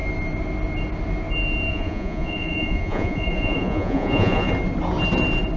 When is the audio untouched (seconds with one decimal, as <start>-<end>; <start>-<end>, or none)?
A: 0.0-1.7; 4.5-5.6